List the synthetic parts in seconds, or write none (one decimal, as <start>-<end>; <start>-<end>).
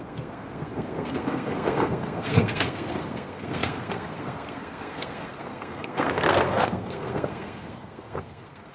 0.0-8.7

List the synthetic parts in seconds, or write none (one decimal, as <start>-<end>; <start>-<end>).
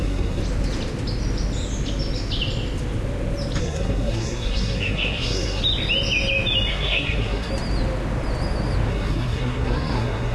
0.0-0.4; 3.6-5.6; 6.7-7.5; 8.9-10.3